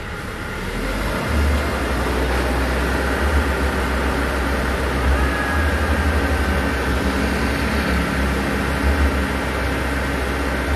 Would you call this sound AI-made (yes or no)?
no